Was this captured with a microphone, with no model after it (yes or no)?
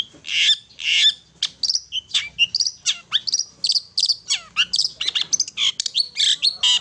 yes